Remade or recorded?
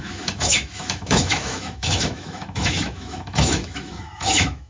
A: remade